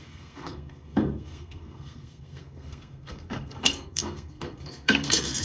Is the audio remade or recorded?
remade